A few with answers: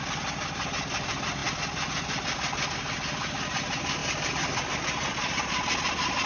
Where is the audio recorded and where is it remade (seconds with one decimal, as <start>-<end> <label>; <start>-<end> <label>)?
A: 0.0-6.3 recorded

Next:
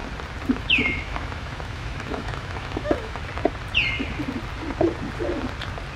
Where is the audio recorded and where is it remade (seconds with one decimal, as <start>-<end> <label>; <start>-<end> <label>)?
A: 0.0-0.6 recorded; 0.6-3.2 remade; 3.2-6.0 recorded

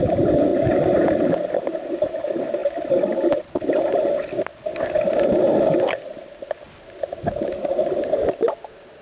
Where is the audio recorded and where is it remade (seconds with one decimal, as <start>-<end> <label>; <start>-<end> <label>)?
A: 0.0-9.0 recorded

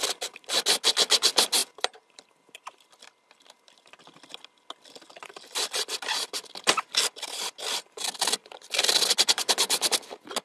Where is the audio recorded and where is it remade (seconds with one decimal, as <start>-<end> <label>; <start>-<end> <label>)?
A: 0.0-1.6 recorded; 1.6-4.0 remade; 4.0-8.4 recorded; 8.4-9.5 remade; 9.5-10.4 recorded

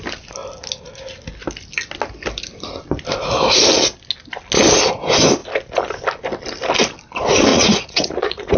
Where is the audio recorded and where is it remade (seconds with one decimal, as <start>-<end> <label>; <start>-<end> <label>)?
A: 0.0-7.5 recorded; 7.5-8.6 remade